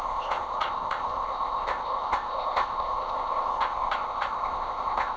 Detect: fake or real fake